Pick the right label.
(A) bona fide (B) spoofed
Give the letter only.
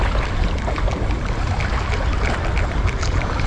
A